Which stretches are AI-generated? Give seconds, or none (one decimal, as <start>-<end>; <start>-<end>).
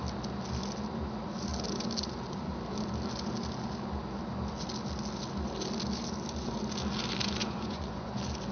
7.4-8.1